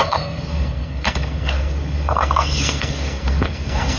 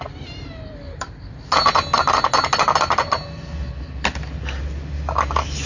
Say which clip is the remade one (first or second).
first